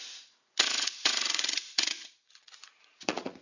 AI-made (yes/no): yes